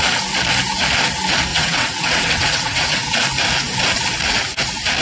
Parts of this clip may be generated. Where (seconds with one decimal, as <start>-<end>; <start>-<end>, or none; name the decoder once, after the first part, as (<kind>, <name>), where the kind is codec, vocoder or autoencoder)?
1.5-3.2 (vocoder, WaveNeXt)